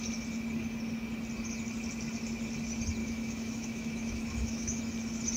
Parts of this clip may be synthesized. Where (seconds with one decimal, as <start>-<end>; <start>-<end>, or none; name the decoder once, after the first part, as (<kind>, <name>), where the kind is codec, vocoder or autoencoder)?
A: 3.0-4.8 (autoencoder, DAC-VAE)